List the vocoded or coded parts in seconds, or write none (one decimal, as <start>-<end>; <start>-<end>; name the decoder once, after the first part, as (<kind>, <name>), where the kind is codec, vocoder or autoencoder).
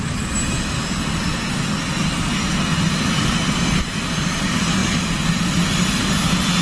none